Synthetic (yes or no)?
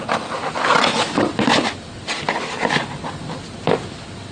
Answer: no